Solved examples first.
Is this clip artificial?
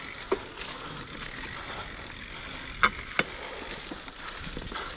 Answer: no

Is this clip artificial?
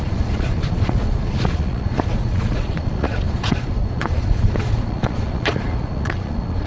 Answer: yes